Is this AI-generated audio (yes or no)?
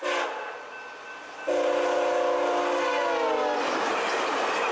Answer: no